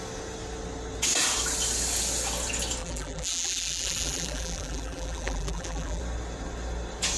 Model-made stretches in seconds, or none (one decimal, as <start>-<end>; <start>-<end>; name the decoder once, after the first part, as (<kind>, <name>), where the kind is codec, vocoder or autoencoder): 2.8-6.0 (vocoder, BigVGAN v2)